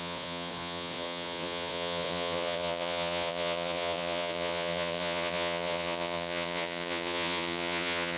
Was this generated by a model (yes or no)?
yes